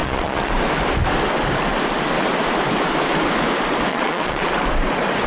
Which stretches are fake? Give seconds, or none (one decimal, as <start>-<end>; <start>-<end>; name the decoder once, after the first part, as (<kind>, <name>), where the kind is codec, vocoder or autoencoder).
0.0-0.5 (vocoder, Vocos); 3.9-4.5